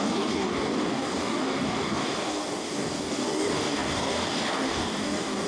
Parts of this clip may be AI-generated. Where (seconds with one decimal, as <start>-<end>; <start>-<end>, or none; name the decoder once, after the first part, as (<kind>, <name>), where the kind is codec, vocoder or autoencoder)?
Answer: 0.0-5.5 (codec, DAC)